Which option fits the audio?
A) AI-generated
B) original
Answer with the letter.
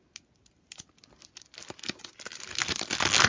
B